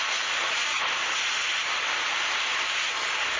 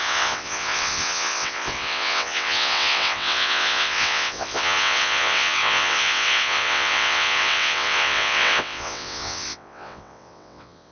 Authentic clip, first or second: first